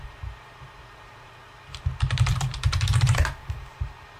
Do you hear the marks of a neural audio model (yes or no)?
yes